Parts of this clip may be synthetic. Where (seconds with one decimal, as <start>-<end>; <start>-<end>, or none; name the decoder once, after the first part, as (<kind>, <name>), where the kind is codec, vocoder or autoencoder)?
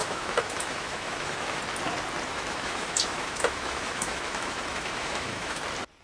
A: 0.0-1.6 (autoencoder, DAC-VAE); 2.3-5.6